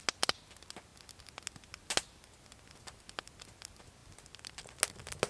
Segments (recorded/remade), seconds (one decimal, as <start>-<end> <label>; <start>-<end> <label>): 0.0-5.3 recorded